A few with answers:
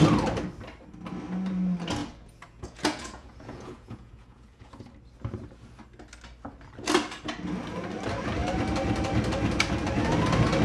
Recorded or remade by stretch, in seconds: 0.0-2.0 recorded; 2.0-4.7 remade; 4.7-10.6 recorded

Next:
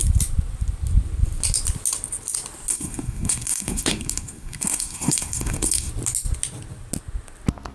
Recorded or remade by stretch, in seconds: 0.0-2.7 recorded; 2.7-5.9 remade; 5.9-7.7 recorded

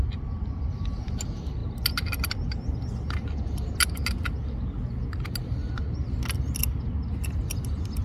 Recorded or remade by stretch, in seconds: 0.0-8.0 recorded

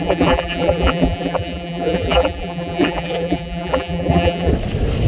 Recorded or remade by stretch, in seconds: 0.0-4.5 remade; 4.5-5.1 recorded